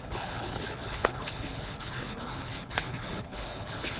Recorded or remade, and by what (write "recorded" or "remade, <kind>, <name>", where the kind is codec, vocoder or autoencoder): remade, codec, HILCodec